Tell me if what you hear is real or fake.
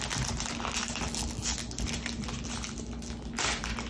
real